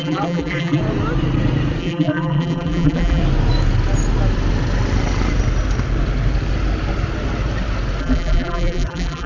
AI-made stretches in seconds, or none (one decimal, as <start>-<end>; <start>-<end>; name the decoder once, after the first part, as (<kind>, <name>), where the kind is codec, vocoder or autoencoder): 0.0-0.8 (vocoder, BigVGAN v2); 1.8-3.2; 8.0-9.3